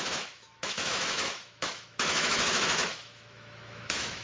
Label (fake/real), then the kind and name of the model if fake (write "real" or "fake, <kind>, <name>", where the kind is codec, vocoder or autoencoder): fake, autoencoder, DAC-VAE